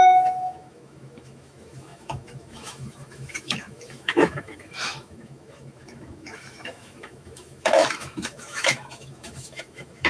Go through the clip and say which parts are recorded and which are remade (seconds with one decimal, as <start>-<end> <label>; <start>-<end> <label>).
0.0-10.1 remade